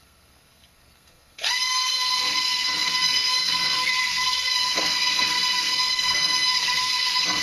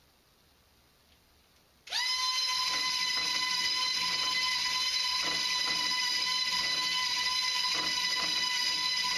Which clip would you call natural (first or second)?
second